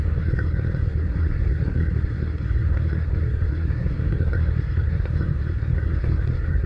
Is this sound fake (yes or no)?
yes